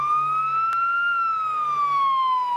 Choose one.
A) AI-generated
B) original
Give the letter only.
B